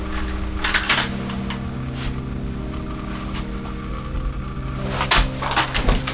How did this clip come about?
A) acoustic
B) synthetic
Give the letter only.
A